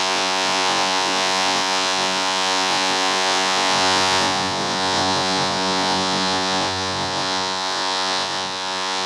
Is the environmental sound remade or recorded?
remade